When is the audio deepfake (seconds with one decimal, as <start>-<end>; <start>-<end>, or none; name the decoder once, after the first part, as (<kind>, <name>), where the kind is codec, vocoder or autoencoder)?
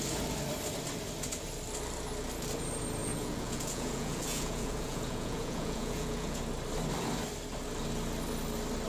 3.0-6.4 (vocoder, Vocos)